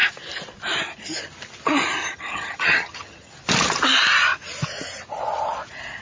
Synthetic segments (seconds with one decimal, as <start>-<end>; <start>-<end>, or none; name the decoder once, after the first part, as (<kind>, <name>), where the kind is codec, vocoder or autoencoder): 2.0-3.3 (vocoder, HiFi-GAN)